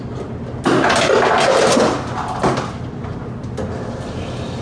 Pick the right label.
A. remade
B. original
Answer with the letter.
B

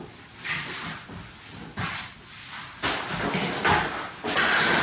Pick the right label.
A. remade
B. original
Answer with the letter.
B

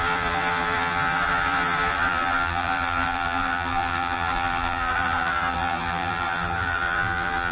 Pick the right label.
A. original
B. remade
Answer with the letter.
B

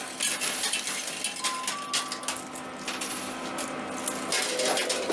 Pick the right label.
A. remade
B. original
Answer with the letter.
B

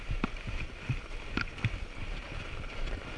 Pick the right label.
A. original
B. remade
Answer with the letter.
A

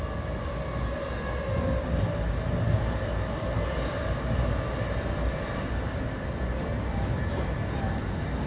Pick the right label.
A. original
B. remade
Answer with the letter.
A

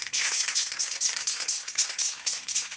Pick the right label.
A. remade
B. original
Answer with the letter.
A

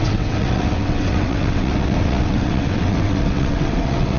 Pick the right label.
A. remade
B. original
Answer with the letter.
A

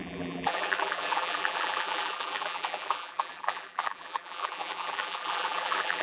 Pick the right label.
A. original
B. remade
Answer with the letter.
B